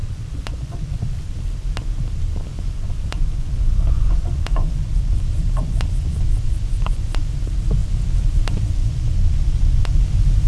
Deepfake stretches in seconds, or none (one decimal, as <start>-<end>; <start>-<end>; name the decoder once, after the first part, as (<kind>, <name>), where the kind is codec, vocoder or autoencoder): 0.0-1.0 (vocoder, Vocos); 2.5-7.3; 8.8-10.0